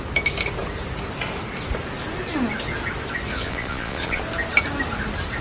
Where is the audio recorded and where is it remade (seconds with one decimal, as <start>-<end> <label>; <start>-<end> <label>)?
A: 0.0-3.3 recorded; 3.3-4.2 remade; 4.2-5.4 recorded